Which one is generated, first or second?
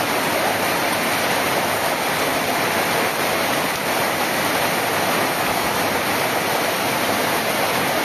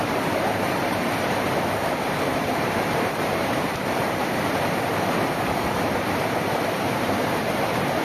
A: second